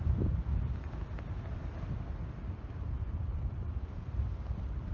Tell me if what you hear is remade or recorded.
recorded